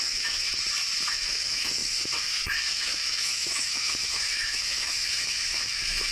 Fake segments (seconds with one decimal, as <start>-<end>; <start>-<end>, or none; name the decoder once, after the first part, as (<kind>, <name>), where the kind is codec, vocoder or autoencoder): 0.0-0.5 (autoencoder, DAC-VAE); 1.1-6.1